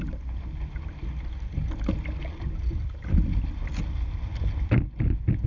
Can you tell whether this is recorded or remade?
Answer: recorded